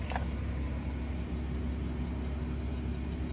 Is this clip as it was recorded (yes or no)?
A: yes